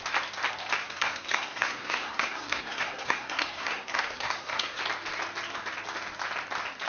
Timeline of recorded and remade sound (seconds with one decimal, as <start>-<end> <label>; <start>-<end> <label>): 0.0-0.8 recorded; 0.8-4.8 remade; 4.8-6.9 recorded